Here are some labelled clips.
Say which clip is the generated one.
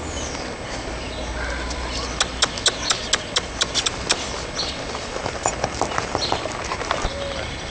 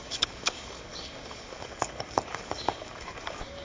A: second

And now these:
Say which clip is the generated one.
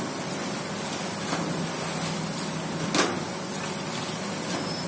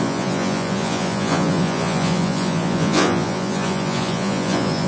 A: second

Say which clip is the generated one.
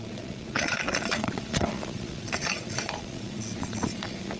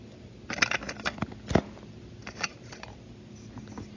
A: first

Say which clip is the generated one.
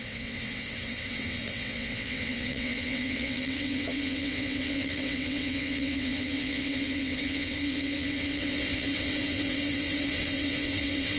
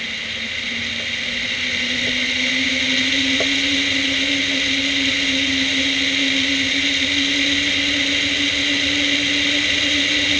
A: first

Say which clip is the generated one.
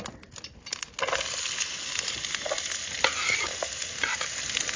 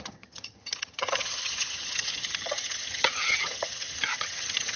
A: second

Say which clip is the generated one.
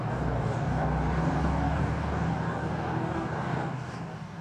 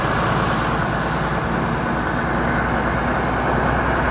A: first